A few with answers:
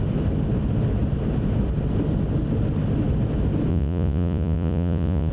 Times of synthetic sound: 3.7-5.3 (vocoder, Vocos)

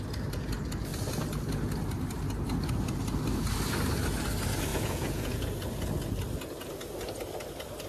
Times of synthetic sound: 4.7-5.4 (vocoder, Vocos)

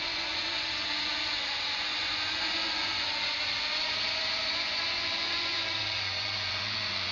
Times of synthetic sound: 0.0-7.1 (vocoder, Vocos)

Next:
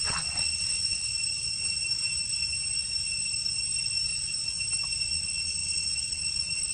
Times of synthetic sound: 0.0-1.1 (vocoder, Vocos); 5.1-6.7

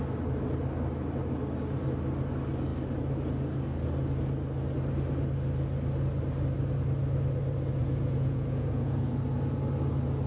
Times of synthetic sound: 7.8-9.1 (vocoder, Vocos)